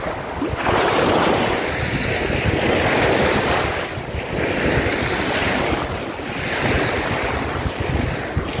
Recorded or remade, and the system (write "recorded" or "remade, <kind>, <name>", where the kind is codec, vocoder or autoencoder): recorded